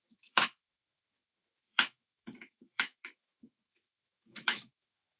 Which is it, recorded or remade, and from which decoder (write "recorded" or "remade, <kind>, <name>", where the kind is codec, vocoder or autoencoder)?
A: remade, autoencoder, DAC-VAE